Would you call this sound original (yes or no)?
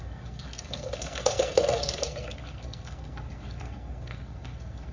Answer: no